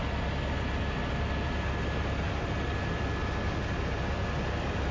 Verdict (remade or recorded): recorded